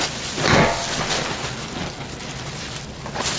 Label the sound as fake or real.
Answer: real